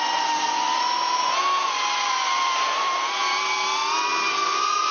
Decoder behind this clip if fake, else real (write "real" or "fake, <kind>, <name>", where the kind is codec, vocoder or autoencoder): real